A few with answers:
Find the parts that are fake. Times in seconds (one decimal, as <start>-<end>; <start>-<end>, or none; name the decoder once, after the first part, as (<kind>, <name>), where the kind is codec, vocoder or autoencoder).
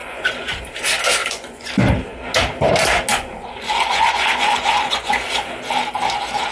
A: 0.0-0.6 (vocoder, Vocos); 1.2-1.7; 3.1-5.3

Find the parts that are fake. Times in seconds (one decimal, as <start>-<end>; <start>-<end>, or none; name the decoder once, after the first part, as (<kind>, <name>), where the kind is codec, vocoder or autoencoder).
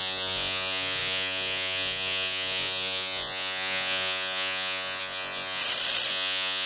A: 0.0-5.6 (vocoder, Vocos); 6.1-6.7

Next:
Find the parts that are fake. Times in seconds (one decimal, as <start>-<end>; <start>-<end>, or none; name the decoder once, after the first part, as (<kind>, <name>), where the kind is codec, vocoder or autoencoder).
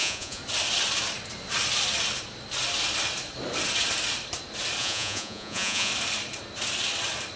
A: 0.0-0.4 (vocoder, Vocos); 4.8-5.9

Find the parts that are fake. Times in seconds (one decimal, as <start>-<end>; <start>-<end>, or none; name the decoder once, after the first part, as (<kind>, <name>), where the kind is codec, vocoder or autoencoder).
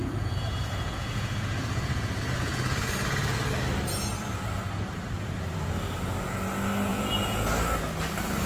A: 0.0-3.4 (vocoder, Vocos); 6.9-7.5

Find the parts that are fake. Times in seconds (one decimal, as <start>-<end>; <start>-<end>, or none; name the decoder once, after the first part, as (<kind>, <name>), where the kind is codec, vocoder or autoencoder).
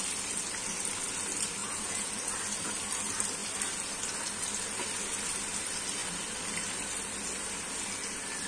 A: 1.6-2.1 (vocoder, Vocos)